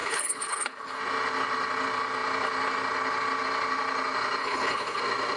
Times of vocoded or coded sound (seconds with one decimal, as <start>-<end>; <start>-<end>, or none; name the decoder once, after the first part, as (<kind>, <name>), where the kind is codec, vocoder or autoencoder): 0.0-1.0 (codec, HILCodec); 4.4-5.0